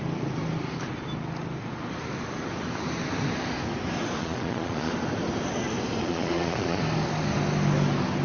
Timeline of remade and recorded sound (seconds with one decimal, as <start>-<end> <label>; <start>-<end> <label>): 0.0-4.2 recorded; 4.2-4.9 remade; 4.9-6.0 recorded; 6.0-6.8 remade; 6.8-8.2 recorded